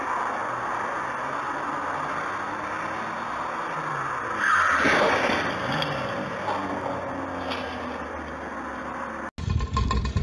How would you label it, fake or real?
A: real